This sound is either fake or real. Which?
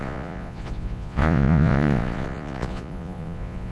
fake